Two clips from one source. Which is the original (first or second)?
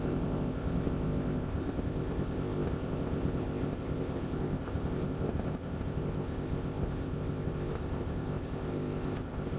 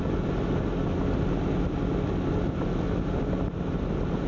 second